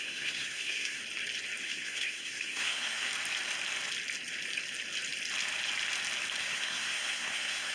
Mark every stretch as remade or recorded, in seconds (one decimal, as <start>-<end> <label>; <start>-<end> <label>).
0.0-1.0 remade; 1.0-1.6 recorded; 1.6-3.1 remade; 3.1-6.4 recorded; 6.4-7.7 remade